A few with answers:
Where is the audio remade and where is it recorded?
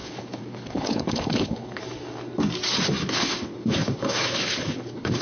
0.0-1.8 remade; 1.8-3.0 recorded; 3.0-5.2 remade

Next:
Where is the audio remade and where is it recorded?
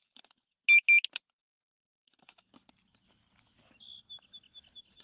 0.0-5.0 recorded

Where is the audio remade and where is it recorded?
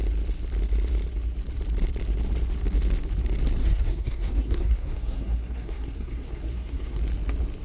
0.0-3.6 recorded; 3.6-7.0 remade; 7.0-7.6 recorded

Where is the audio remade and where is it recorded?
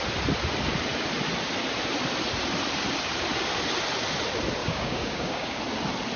0.0-4.6 recorded; 4.6-5.6 remade; 5.6-6.2 recorded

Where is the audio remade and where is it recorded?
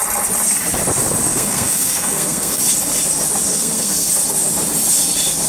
0.0-1.3 recorded; 1.3-2.6 remade; 2.6-3.5 recorded; 3.5-4.1 remade; 4.1-5.5 recorded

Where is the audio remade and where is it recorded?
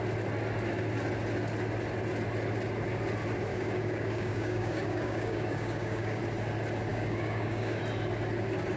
0.0-3.5 recorded; 3.5-6.2 remade; 6.2-6.9 recorded; 6.9-7.8 remade; 7.8-8.8 recorded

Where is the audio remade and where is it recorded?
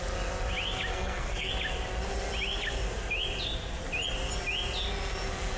0.0-0.9 recorded; 0.9-1.5 remade; 1.5-5.6 recorded